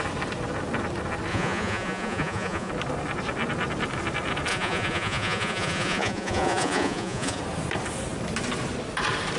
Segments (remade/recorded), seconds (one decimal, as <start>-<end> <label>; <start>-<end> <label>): 0.0-1.3 recorded; 1.3-2.7 remade; 2.7-4.5 recorded; 4.5-7.4 remade; 7.4-9.4 recorded